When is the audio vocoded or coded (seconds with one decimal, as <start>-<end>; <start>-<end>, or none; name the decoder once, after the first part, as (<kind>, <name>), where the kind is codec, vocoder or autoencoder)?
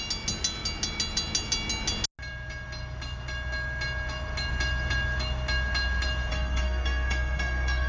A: 6.3-7.9 (codec, SNAC)